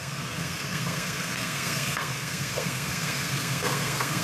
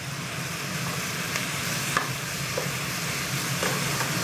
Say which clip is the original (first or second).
second